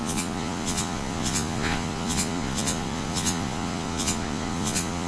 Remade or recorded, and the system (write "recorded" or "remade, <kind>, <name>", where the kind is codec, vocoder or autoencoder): remade, vocoder, Vocos